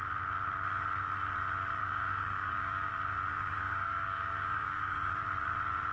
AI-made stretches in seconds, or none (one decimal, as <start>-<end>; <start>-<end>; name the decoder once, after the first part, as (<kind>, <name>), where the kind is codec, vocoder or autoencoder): 1.8-2.9 (codec, DAC); 3.3-5.2